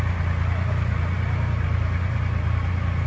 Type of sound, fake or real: real